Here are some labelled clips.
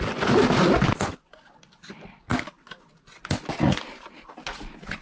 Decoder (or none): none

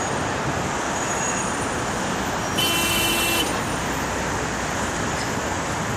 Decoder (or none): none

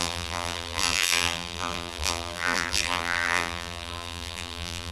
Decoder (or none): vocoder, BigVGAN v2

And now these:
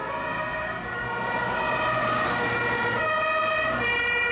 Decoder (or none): none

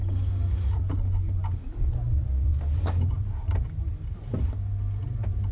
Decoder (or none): none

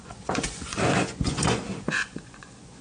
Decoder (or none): vocoder, Vocos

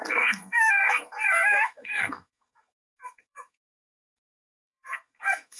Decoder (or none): codec, SNAC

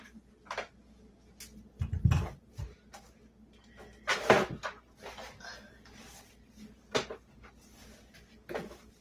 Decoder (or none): none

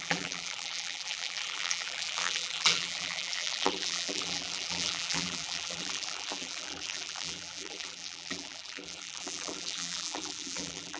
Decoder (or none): vocoder, BigVGAN v2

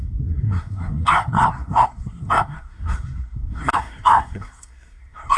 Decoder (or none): codec, SNAC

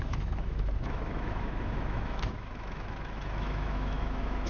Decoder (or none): autoencoder, DAC-VAE